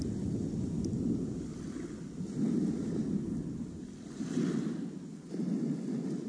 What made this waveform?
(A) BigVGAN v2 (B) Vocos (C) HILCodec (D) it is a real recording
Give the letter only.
D